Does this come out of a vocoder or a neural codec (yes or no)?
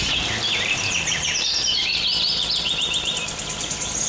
yes